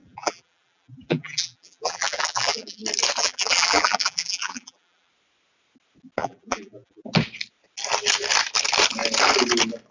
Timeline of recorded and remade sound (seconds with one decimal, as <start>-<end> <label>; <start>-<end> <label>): 0.0-2.8 remade; 2.8-3.2 recorded; 3.2-5.1 remade; 5.1-6.2 recorded; 6.2-7.1 remade; 7.1-9.9 recorded